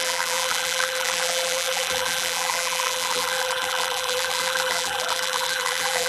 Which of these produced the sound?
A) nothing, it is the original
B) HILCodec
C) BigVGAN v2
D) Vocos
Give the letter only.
C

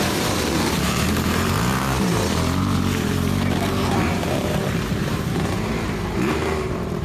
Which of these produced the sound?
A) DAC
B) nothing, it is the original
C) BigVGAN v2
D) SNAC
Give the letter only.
C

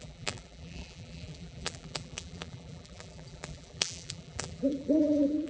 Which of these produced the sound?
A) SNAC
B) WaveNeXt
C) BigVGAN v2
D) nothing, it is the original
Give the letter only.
C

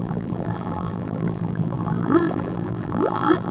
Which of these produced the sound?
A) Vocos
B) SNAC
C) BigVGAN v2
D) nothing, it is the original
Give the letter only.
C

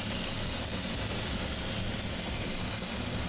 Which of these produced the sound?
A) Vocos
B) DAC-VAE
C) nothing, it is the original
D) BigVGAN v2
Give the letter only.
C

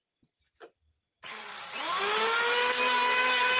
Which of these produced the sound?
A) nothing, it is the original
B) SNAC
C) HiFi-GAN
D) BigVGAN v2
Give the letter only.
A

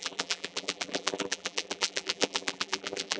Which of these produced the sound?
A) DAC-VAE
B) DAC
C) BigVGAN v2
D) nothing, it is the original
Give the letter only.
C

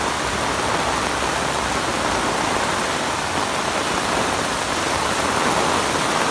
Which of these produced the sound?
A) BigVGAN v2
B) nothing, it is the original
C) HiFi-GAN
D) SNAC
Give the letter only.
B